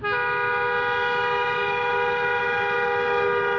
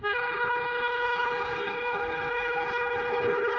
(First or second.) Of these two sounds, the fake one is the second